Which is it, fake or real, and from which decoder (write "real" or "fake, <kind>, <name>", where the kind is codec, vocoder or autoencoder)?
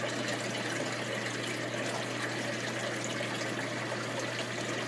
real